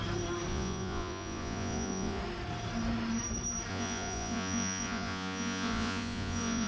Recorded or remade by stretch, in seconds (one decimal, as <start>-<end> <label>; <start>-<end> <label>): 0.0-0.5 recorded; 0.5-2.2 remade; 2.2-3.7 recorded; 3.7-6.7 remade